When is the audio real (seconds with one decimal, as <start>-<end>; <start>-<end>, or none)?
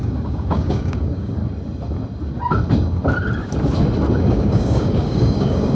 1.4-4.1